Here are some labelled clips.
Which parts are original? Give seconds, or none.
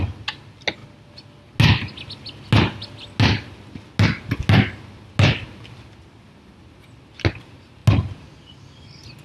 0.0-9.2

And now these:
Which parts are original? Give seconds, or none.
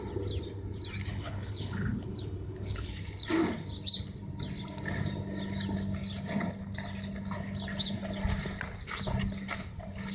0.0-1.1; 2.9-10.1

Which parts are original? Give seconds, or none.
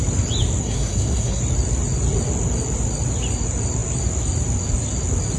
0.0-0.6; 1.4-5.4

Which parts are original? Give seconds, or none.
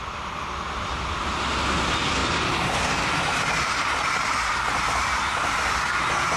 0.0-6.4